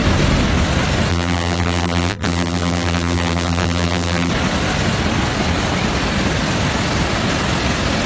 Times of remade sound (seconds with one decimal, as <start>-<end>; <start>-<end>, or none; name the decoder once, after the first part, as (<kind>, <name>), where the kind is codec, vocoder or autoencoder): 1.1-4.3 (vocoder, BigVGAN v2)